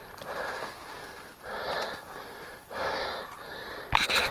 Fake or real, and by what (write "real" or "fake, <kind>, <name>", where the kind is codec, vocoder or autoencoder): real